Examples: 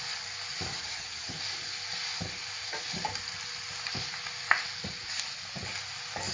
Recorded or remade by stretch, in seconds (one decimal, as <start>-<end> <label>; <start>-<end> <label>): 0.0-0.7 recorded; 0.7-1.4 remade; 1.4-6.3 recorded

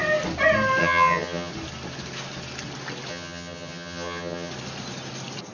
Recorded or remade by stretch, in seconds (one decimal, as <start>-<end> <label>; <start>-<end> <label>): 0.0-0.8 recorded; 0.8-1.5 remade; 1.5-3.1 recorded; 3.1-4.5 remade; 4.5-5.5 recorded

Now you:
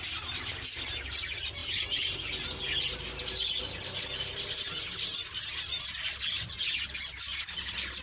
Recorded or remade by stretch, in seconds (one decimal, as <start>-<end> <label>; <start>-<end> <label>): 0.0-8.0 recorded

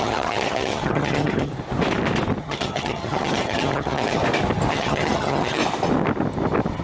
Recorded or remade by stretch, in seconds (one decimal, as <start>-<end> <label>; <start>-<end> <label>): 0.0-1.5 remade; 1.5-2.4 recorded; 2.4-4.2 remade; 4.2-4.7 recorded; 4.7-5.6 remade; 5.6-6.8 recorded

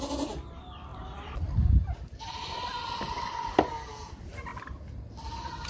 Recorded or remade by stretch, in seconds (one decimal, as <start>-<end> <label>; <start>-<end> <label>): 0.0-5.7 recorded

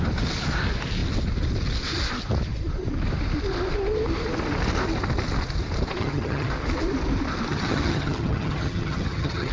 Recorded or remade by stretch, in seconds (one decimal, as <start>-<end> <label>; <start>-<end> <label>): 0.0-6.0 recorded; 6.0-6.5 remade; 6.5-7.5 recorded; 7.5-9.5 remade